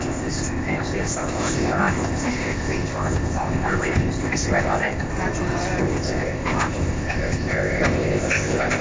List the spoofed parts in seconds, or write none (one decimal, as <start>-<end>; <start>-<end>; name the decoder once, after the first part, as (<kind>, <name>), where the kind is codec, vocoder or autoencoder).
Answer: 0.0-5.1 (codec, ZipCodec); 5.8-8.8